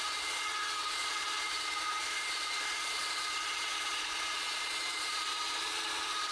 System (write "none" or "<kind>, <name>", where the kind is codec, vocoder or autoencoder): vocoder, Vocos